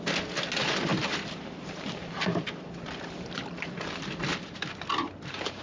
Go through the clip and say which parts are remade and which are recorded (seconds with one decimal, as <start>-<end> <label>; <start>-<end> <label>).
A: 0.0-0.9 recorded; 0.9-4.3 remade; 4.3-5.6 recorded